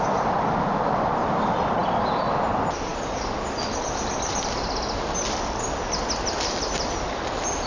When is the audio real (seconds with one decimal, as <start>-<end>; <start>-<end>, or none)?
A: 0.0-7.7